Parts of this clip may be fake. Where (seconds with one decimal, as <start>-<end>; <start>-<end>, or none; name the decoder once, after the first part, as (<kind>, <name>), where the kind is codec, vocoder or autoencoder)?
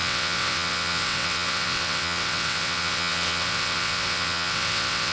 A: 0.0-5.1 (vocoder, WaveNeXt)